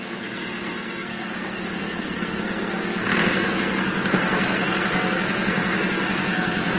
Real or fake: fake